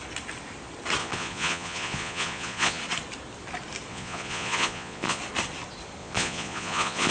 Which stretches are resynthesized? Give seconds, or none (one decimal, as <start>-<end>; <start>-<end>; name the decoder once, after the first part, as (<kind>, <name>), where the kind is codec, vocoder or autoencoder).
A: 1.0-2.8 (vocoder, Vocos); 3.9-5.2; 6.0-7.1